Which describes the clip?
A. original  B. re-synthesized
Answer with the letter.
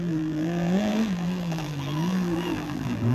B